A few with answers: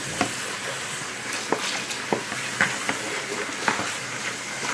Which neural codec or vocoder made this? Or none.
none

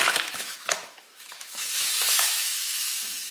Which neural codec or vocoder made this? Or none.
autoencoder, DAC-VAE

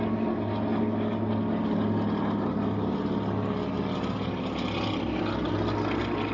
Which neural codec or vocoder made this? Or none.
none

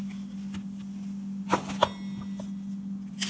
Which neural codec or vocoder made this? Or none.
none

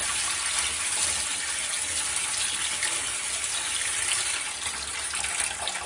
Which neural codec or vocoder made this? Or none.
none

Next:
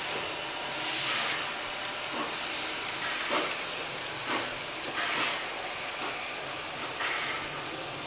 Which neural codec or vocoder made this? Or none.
none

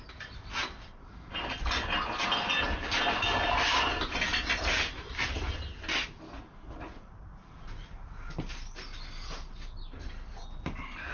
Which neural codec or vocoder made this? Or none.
none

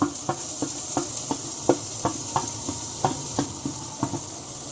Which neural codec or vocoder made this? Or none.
vocoder, BigVGAN v2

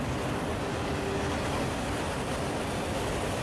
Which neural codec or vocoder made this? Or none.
none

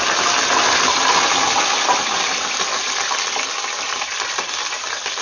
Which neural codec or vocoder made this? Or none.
none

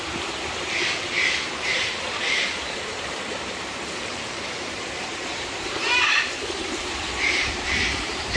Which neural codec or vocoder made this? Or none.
vocoder, BigVGAN v2